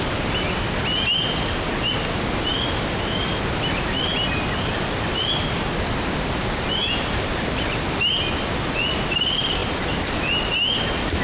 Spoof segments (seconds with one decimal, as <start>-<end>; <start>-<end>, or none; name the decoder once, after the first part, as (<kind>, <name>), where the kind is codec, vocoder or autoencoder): none